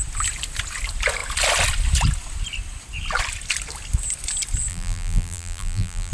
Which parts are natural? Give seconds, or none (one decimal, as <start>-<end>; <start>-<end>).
0.0-4.7